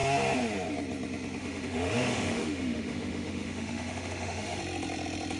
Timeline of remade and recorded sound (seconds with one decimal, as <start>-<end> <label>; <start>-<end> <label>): 0.0-1.4 recorded; 1.4-4.6 remade; 4.6-5.4 recorded